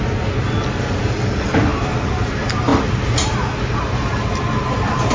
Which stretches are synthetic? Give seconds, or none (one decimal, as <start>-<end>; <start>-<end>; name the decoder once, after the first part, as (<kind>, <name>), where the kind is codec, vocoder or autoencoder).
none